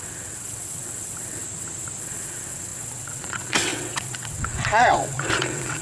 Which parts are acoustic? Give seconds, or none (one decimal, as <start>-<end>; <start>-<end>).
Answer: 1.4-2.0